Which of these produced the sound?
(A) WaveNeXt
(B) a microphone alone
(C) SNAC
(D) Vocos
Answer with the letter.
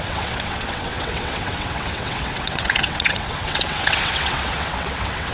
A